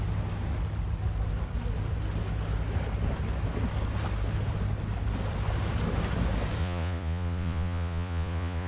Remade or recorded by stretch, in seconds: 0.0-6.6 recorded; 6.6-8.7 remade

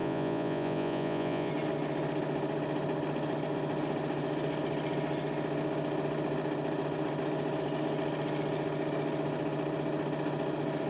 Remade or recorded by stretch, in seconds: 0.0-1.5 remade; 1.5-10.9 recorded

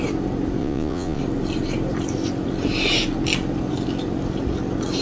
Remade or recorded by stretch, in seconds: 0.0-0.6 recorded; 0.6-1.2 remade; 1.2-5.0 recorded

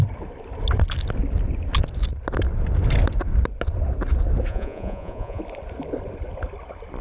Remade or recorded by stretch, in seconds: 0.0-4.5 recorded; 4.5-5.4 remade; 5.4-7.0 recorded

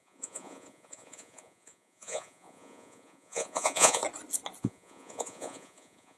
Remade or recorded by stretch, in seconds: 0.0-4.0 remade; 4.0-4.6 recorded; 4.6-6.2 remade